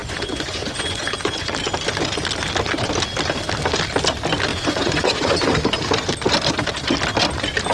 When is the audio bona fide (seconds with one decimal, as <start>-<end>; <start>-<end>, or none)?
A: 1.5-4.5; 5.5-7.7

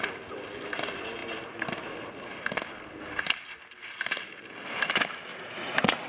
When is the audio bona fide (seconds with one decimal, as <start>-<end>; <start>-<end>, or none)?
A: 0.0-5.3

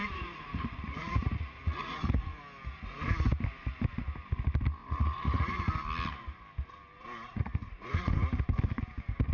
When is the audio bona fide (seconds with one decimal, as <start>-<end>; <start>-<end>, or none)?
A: 2.4-4.8; 5.7-7.3; 8.1-9.3

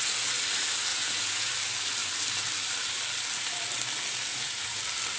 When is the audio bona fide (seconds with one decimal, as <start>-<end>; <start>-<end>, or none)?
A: 0.0-0.9; 1.5-4.3; 4.8-5.2

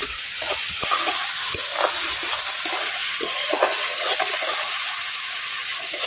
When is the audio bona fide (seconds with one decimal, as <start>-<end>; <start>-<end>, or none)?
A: 1.7-2.6

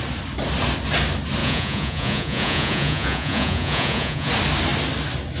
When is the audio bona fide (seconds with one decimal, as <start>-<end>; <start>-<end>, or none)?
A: 0.0-1.4; 4.3-5.4

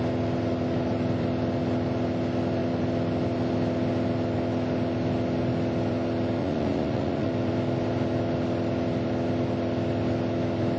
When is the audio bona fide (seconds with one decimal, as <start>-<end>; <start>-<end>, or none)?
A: 0.0-6.4; 7.3-10.8